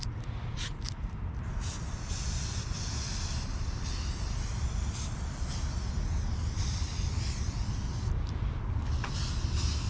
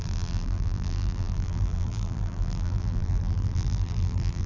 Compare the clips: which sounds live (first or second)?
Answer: first